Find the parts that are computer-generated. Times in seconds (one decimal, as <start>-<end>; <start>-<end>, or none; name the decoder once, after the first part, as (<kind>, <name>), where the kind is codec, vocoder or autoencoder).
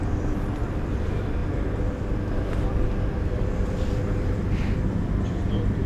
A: 0.0-1.4 (vocoder, BigVGAN v2); 2.3-5.9